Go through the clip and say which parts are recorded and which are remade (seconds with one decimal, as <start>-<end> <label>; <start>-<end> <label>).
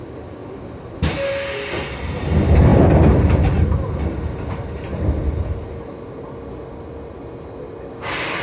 0.0-0.4 recorded; 0.4-1.5 remade; 1.5-8.4 recorded